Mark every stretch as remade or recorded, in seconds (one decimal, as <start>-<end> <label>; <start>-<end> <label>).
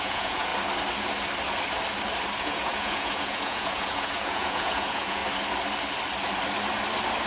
0.0-0.5 remade; 0.5-2.4 recorded; 2.4-5.2 remade; 5.2-7.3 recorded